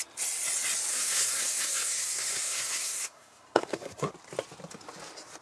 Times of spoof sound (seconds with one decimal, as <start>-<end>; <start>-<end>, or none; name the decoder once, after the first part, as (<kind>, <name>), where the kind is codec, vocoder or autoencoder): 0.9-4.1 (codec, SNAC)